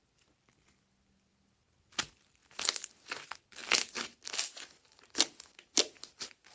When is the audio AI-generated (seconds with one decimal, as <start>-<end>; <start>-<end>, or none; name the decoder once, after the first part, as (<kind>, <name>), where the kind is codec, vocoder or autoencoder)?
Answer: none